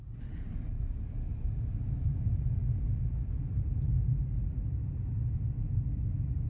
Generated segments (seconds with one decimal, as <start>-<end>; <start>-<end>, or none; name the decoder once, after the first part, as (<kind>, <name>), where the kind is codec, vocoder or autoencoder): none